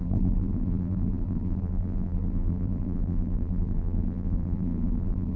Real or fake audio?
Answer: fake